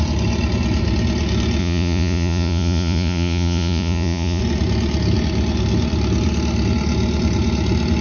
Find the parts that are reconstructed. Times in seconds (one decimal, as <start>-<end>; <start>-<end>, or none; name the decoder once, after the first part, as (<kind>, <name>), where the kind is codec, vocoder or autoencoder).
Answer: 1.6-4.4 (vocoder, Vocos)